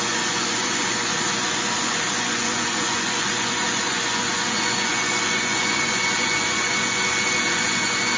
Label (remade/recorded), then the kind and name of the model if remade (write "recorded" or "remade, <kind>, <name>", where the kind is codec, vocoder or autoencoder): remade, vocoder, Vocos